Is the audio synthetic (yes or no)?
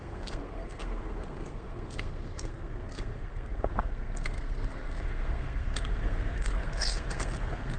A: yes